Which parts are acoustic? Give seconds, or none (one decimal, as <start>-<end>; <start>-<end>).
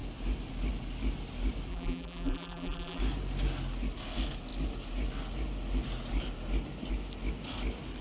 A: 0.0-1.7; 3.0-8.0